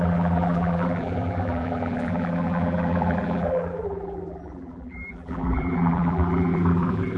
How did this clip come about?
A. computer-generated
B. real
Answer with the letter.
A